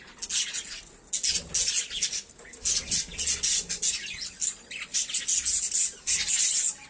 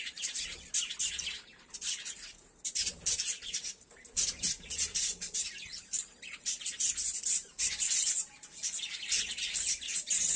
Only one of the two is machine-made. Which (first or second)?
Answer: second